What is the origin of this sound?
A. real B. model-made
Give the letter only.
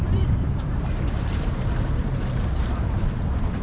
B